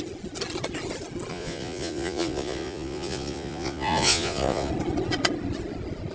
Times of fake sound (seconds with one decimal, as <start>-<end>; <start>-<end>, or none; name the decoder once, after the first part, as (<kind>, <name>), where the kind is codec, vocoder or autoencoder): 1.3-4.7 (vocoder, Vocos)